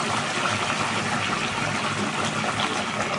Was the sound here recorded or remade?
recorded